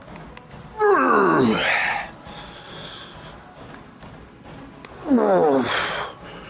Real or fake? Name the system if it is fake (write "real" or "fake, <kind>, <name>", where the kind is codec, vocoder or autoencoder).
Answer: real